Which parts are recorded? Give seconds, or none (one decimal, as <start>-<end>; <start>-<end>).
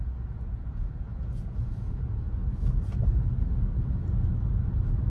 2.4-5.1